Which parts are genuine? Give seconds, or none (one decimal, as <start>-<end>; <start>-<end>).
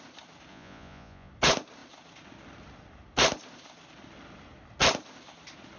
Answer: 0.0-0.5; 1.3-5.8